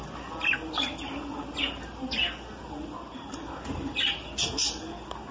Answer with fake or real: real